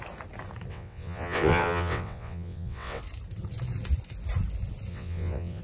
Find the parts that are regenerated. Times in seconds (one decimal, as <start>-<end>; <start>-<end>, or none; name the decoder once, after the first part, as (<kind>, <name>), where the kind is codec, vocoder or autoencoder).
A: 0.7-3.0 (vocoder, WaveNeXt); 4.9-5.6